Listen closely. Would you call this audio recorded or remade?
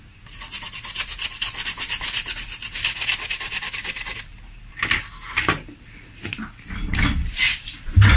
recorded